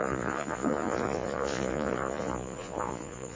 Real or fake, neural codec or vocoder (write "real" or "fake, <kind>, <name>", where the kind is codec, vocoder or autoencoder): fake, vocoder, Vocos